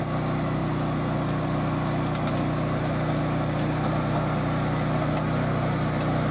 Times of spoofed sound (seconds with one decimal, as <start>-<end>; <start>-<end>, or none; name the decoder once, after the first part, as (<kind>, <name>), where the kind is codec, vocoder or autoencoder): none